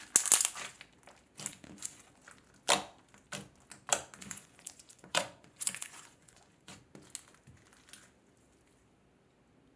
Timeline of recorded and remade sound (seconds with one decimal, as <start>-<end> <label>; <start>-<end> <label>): 0.0-1.5 recorded; 1.5-2.2 remade; 2.2-4.2 recorded; 4.2-6.8 remade; 6.8-9.8 recorded